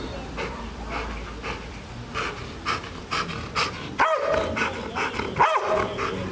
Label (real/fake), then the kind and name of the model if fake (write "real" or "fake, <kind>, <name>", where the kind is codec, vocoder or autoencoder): real